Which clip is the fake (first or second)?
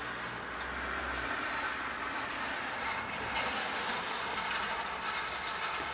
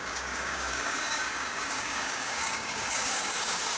second